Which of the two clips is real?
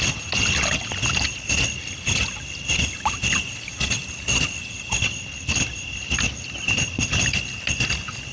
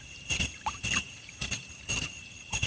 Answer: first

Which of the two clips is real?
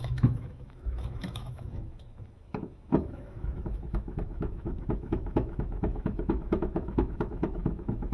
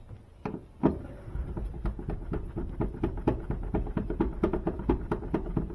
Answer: second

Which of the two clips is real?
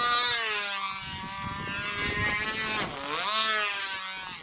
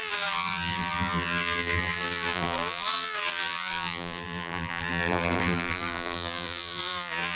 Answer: first